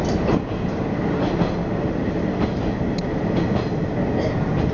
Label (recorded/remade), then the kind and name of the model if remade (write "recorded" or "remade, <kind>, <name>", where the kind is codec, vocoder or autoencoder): recorded